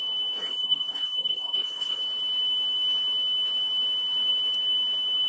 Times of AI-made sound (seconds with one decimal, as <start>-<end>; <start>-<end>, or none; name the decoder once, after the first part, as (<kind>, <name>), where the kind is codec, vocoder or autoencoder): 0.4-2.0 (codec, SNAC)